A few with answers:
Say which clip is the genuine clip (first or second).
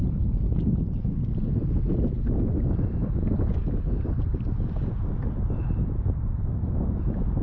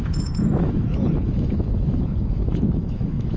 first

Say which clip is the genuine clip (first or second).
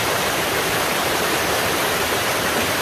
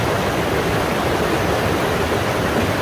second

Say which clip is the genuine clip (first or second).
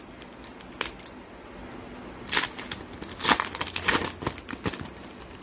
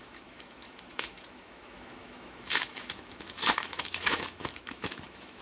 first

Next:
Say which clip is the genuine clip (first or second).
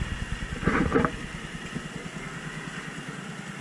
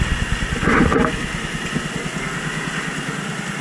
second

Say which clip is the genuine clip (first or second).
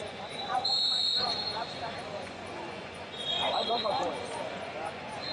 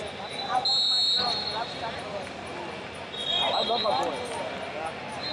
second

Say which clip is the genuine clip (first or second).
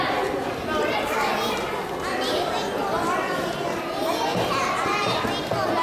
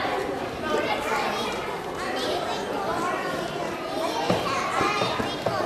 first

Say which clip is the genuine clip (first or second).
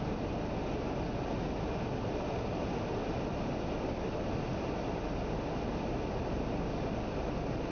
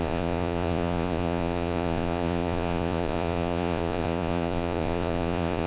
first